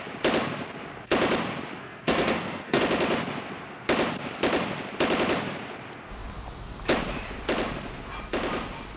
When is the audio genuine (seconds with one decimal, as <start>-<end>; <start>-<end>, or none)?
0.0-1.8; 2.8-9.0